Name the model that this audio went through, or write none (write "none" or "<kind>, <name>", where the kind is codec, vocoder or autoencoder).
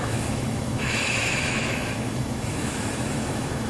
autoencoder, DAC-VAE